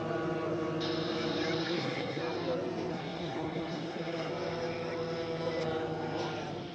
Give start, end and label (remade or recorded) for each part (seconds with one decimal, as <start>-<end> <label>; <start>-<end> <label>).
0.0-1.6 recorded; 1.6-2.2 remade; 2.2-2.9 recorded; 2.9-4.3 remade; 4.3-6.7 recorded